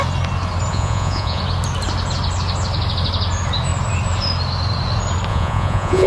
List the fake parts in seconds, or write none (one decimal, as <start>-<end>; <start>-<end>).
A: 0.7-1.4; 5.3-6.1